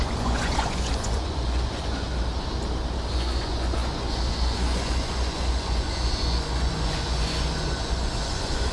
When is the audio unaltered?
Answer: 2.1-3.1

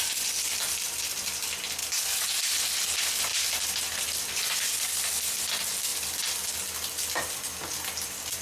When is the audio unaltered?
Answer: 0.0-8.4

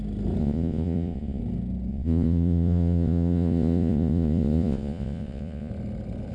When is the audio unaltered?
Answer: 0.0-0.4; 1.4-1.9; 5.7-6.3

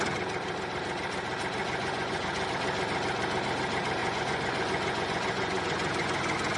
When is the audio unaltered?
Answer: 0.0-1.6; 2.5-4.0

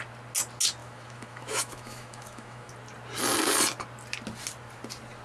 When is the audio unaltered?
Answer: 0.0-0.8; 2.7-5.2

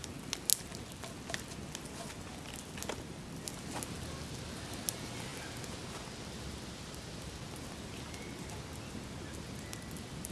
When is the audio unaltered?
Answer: 0.0-10.3

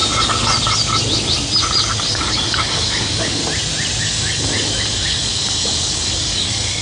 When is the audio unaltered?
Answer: 0.0-2.1; 3.4-4.0